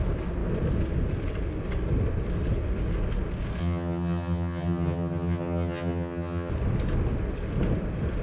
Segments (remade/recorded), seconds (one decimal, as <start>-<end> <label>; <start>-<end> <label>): 0.0-3.6 recorded; 3.6-6.5 remade; 6.5-8.2 recorded